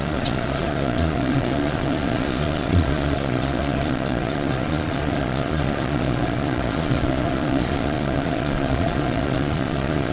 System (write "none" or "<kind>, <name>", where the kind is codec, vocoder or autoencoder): vocoder, Vocos